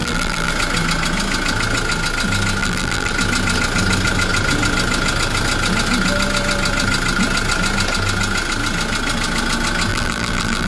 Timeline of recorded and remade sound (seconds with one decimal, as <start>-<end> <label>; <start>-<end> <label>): 0.0-0.5 remade; 0.5-2.6 recorded; 2.6-3.1 remade; 3.1-9.9 recorded; 9.9-10.7 remade